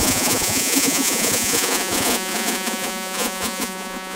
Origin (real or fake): fake